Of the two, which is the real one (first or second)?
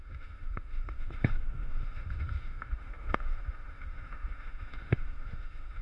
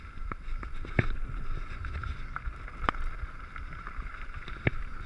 second